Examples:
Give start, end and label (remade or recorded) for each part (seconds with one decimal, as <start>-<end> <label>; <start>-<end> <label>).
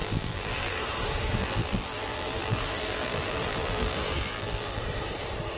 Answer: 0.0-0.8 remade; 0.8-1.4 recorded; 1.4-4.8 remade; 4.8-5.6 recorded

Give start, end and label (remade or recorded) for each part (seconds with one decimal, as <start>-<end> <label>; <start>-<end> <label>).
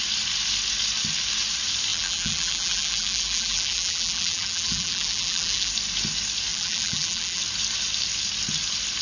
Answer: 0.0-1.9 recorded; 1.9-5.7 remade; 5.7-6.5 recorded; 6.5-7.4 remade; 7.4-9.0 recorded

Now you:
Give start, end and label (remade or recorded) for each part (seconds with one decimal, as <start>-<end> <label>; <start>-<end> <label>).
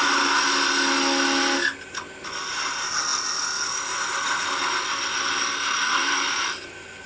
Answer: 0.0-6.0 recorded; 6.0-6.6 remade; 6.6-7.1 recorded